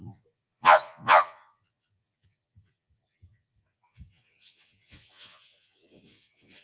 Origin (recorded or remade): remade